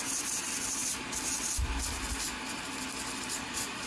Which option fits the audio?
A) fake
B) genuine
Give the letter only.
B